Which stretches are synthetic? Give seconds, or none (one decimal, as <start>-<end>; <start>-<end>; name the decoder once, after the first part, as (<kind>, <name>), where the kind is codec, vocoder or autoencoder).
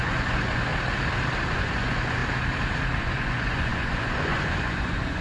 0.0-0.7 (vocoder, Vocos); 1.5-2.2; 3.0-5.2